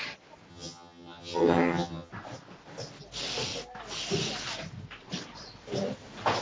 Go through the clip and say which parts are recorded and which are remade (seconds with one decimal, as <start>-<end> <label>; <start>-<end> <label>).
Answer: 0.0-0.5 recorded; 0.5-2.1 remade; 2.1-6.4 recorded